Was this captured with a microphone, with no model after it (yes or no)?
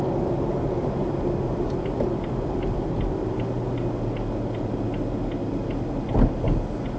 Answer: yes